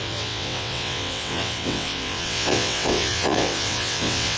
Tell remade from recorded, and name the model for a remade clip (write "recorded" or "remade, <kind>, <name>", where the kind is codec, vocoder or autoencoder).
remade, vocoder, WaveNeXt